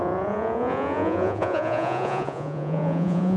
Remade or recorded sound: remade